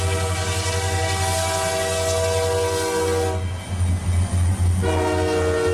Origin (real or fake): real